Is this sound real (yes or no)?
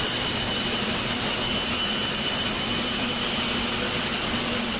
yes